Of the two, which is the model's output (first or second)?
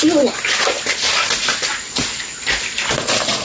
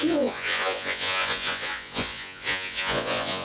second